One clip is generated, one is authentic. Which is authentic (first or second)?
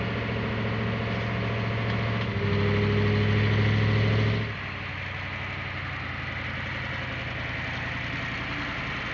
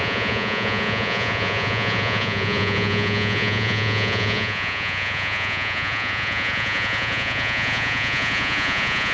first